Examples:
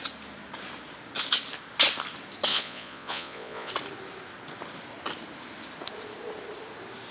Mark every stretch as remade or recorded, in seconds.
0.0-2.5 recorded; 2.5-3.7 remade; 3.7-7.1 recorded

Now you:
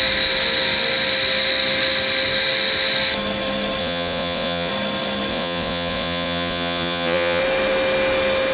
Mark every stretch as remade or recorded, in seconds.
0.0-3.8 recorded; 3.8-4.7 remade; 4.7-5.3 recorded; 5.3-7.4 remade; 7.4-8.5 recorded